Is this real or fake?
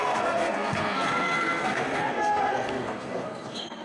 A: fake